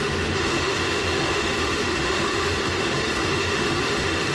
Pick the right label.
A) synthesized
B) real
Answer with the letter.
A